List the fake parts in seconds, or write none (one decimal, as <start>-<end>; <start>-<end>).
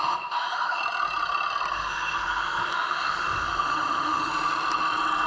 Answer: 0.0-0.8; 1.7-4.3